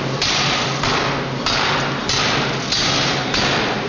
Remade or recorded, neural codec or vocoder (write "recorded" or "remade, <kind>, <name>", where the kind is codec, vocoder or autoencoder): recorded